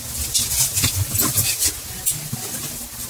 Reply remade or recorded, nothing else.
recorded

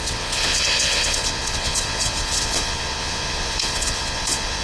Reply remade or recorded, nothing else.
remade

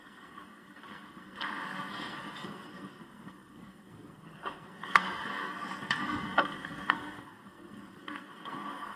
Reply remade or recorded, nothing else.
remade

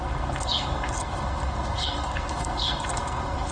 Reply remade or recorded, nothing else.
remade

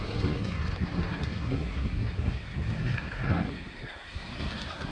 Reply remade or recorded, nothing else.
remade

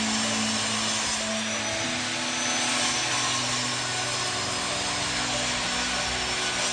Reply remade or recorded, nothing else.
recorded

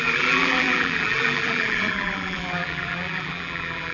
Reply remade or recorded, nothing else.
remade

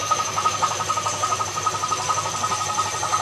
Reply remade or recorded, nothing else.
recorded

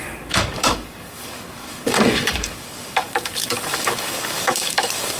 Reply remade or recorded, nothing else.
remade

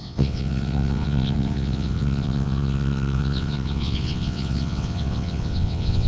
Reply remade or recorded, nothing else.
remade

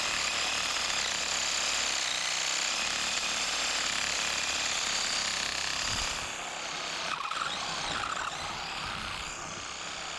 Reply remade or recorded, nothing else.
recorded